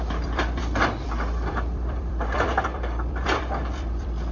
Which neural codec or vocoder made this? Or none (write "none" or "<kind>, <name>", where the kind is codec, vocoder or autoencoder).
vocoder, BigVGAN v2